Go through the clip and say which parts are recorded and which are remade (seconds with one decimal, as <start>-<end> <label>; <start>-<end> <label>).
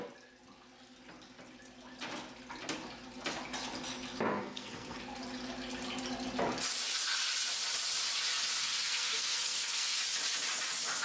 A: 0.0-4.3 recorded; 4.3-5.0 remade; 5.0-8.6 recorded; 8.6-10.0 remade; 10.0-11.0 recorded